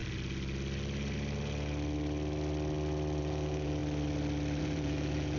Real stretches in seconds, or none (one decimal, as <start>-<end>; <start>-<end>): 0.0-3.2; 3.8-4.6